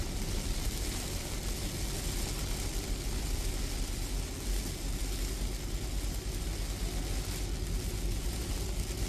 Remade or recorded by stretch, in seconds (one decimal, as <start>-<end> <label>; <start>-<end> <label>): 0.0-9.1 recorded